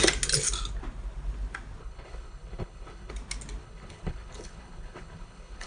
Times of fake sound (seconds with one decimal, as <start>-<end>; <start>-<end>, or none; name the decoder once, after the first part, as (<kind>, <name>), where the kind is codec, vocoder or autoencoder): 1.8-3.1 (codec, HILCodec); 3.6-5.7